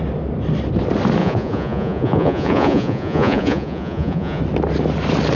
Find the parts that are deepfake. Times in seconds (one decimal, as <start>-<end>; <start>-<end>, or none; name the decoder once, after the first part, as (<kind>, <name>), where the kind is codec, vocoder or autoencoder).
1.2-4.4 (vocoder, Vocos)